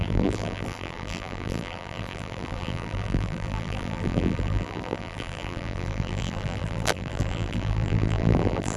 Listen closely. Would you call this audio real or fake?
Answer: fake